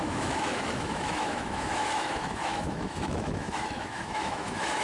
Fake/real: fake